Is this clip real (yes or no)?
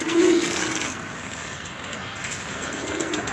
no